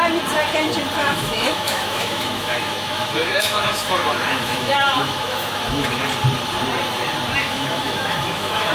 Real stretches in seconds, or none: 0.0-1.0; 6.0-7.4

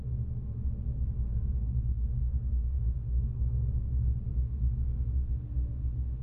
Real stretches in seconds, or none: 0.0-2.2; 3.5-4.3; 5.3-6.2

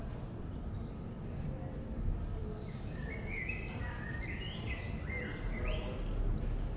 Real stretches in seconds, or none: 0.0-6.8

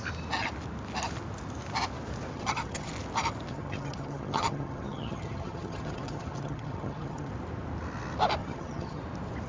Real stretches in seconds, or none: 0.0-2.3; 2.9-3.5; 7.3-8.4; 9.0-9.5

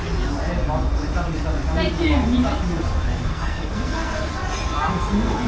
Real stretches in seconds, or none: 0.0-3.3; 4.3-4.9